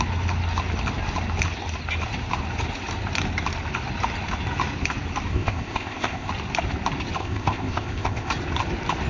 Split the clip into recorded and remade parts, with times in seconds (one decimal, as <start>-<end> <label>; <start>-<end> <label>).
0.0-5.3 recorded; 5.3-6.3 remade; 6.3-7.2 recorded; 7.2-8.3 remade; 8.3-9.1 recorded

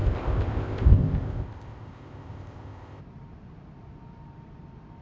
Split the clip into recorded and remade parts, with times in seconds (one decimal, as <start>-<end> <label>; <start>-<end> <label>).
0.0-3.0 remade; 3.0-5.0 recorded

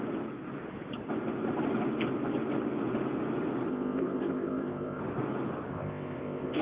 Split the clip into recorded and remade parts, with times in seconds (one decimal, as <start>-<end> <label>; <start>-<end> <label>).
0.0-3.7 recorded; 3.7-5.0 remade; 5.0-5.7 recorded; 5.7-6.6 remade

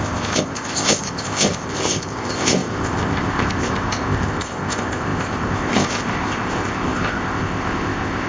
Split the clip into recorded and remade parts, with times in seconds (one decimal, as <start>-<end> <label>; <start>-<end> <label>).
0.0-8.3 remade

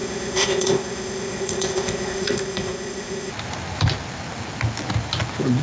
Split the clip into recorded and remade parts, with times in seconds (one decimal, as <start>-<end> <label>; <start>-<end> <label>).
0.0-3.3 remade; 3.3-5.6 recorded